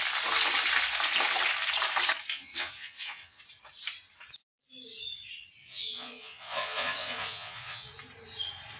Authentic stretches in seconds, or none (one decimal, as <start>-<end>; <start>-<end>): 0.0-2.3; 3.4-5.6; 7.9-8.8